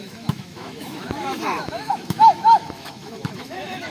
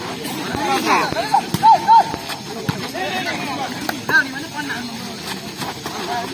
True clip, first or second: second